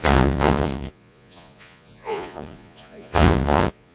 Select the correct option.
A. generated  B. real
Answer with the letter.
A